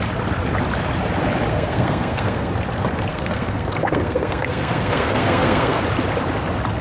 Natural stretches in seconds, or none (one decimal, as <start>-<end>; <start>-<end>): 0.0-1.5; 2.5-3.1; 5.8-6.8